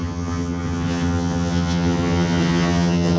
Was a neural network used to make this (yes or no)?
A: yes